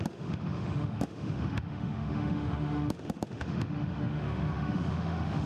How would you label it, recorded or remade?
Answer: remade